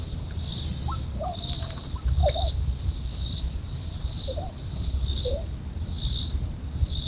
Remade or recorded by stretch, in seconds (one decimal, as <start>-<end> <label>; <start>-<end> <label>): 0.0-7.1 recorded